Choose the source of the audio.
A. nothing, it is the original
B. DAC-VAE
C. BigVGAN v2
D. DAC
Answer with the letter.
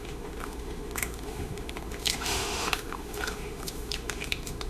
B